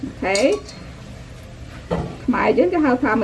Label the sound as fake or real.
real